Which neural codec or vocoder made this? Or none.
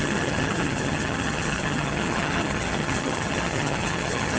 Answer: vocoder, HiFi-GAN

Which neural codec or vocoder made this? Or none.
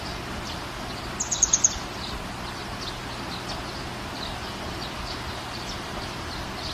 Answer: none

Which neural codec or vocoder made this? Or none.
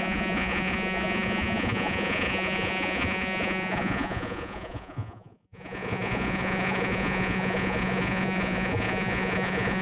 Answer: vocoder, Vocos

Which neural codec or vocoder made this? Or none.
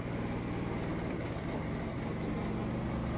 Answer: none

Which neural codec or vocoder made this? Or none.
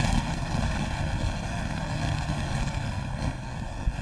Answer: codec, SNAC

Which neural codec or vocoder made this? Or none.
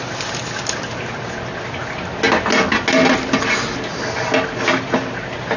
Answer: none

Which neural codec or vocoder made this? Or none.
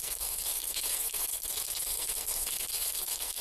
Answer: codec, SNAC